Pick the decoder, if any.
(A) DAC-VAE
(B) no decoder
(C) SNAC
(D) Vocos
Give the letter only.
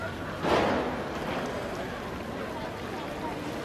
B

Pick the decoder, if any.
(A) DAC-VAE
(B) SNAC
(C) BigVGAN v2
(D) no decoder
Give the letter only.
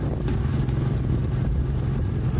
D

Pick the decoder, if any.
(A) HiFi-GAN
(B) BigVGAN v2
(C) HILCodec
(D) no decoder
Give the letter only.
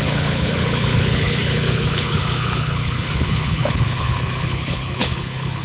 C